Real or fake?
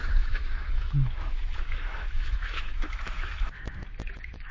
fake